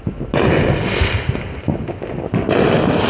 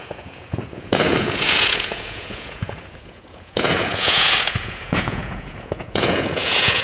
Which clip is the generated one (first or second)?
second